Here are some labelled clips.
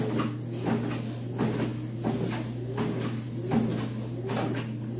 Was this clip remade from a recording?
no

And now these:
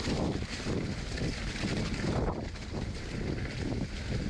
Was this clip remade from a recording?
no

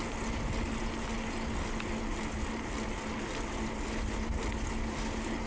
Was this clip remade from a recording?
no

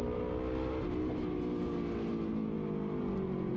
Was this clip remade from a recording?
no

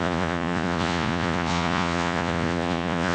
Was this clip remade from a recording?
yes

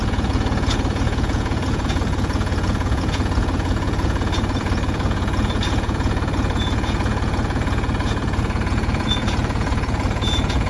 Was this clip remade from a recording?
yes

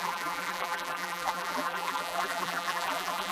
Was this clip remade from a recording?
yes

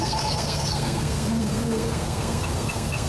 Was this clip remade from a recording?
yes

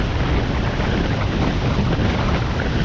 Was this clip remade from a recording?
no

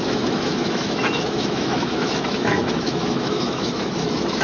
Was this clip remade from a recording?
yes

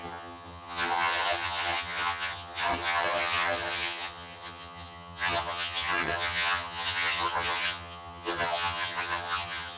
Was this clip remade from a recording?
yes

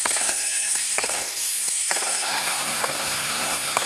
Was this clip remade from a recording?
yes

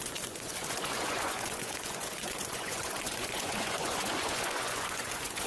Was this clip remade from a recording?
yes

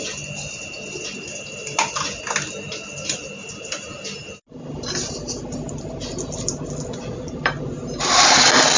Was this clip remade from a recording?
no